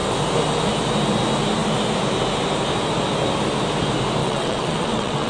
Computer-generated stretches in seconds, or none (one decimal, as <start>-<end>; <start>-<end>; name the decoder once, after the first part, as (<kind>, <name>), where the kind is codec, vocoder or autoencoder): 4.2-5.3 (vocoder, WaveNeXt)